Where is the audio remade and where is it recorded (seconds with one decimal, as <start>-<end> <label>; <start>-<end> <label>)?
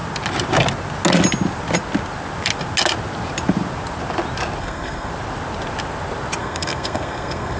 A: 0.0-4.6 recorded; 4.6-5.1 remade; 5.1-6.4 recorded; 6.4-7.6 remade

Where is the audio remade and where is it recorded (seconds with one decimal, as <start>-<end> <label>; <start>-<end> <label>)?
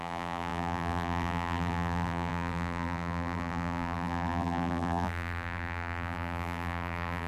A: 0.0-7.3 remade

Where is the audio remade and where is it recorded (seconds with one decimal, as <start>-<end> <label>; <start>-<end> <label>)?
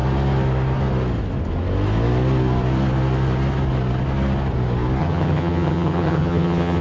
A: 0.0-5.0 recorded; 5.0-6.8 remade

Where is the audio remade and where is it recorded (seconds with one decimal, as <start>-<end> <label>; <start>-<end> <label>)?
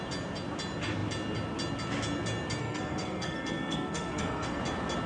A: 0.0-2.6 recorded; 2.6-4.6 remade; 4.6-5.1 recorded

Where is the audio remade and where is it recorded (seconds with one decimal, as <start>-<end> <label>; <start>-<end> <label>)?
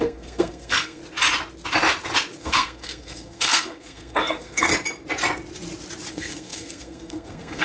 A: 0.0-1.0 remade; 1.0-2.4 recorded; 2.4-4.7 remade; 4.7-6.1 recorded; 6.1-7.6 remade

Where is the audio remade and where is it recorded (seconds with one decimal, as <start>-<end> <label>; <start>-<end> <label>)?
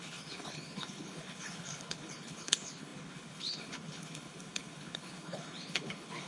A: 0.0-6.3 remade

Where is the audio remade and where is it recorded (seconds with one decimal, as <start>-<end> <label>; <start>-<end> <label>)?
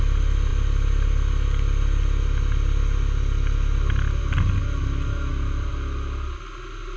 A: 0.0-5.3 recorded; 5.3-6.4 remade; 6.4-7.0 recorded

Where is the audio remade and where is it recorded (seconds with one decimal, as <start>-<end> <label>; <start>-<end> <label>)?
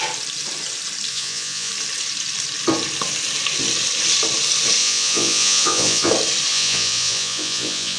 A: 0.0-1.1 recorded; 1.1-1.7 remade; 1.7-4.8 recorded; 4.8-6.1 remade; 6.1-6.5 recorded; 6.5-8.0 remade